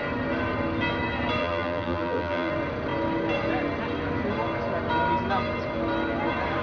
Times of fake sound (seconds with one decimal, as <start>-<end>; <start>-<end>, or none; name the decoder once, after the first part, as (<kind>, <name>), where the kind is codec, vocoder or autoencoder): 1.4-2.5 (vocoder, BigVGAN v2)

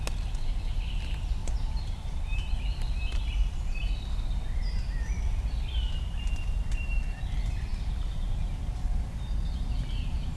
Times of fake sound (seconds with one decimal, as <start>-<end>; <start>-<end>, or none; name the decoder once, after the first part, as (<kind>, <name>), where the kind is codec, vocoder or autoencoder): 1.4-3.6 (vocoder, BigVGAN v2)

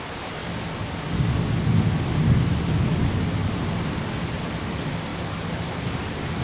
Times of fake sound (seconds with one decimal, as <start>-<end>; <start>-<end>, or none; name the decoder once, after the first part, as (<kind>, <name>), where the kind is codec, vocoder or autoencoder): 0.0-0.4 (vocoder, BigVGAN v2); 4.2-6.4

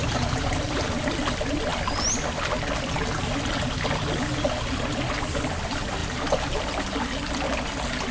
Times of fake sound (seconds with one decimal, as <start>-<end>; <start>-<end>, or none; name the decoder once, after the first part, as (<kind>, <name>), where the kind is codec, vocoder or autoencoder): 0.0-1.0 (vocoder, BigVGAN v2); 6.0-6.6